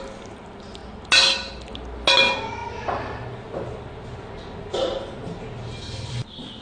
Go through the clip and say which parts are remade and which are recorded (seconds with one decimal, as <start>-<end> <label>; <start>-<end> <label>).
0.0-6.6 recorded